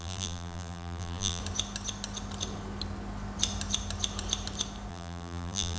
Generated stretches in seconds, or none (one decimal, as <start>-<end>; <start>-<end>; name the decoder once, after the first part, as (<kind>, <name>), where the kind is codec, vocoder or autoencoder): 0.0-1.4 (vocoder, BigVGAN v2); 4.9-5.8